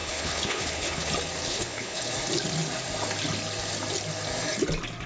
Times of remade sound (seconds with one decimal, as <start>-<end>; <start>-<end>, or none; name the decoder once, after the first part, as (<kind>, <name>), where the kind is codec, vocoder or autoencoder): 0.0-1.1 (codec, HILCodec); 1.5-2.1